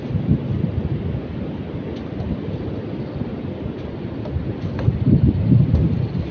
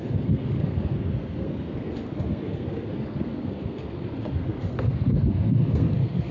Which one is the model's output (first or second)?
second